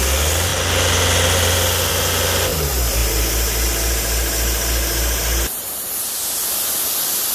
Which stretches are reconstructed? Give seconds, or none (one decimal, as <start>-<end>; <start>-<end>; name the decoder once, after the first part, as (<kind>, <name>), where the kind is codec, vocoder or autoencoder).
none